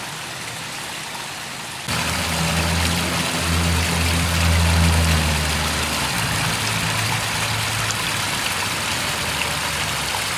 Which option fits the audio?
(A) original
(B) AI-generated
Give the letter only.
A